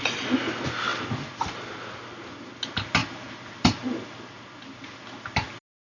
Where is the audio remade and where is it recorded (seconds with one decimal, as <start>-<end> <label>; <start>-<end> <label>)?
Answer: 0.0-3.0 recorded; 3.0-5.5 remade; 5.5-5.9 recorded